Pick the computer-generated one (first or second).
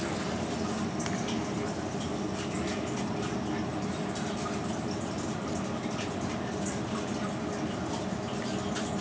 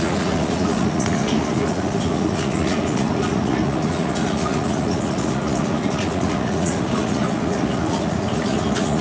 second